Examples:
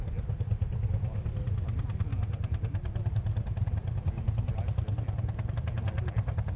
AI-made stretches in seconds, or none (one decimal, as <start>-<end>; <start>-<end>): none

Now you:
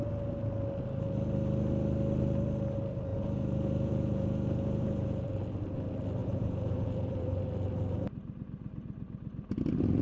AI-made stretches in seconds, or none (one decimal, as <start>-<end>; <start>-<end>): 3.1-5.3; 6.2-7.4

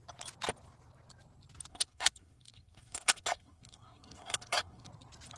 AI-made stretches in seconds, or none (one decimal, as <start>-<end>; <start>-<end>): 1.7-4.9

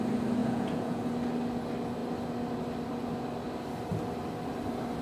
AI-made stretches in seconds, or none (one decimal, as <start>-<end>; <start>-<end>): 0.4-1.1

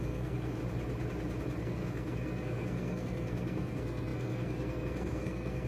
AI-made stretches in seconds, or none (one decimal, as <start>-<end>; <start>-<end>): 0.0-0.6; 1.6-5.7